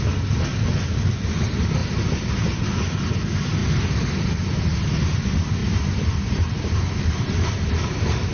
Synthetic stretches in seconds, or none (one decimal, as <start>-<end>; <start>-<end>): 0.5-1.1; 5.6-8.3